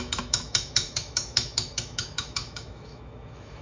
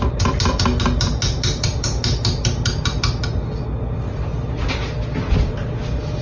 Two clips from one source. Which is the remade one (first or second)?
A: first